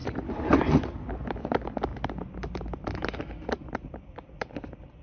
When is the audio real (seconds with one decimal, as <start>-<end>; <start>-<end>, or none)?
1.5-3.6